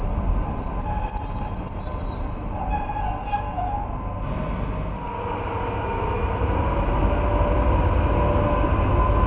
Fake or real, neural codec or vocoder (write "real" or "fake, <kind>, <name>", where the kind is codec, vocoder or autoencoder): real